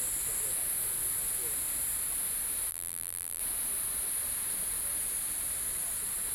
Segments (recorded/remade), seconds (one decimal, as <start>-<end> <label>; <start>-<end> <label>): 0.0-2.7 recorded; 2.7-3.4 remade; 3.4-6.3 recorded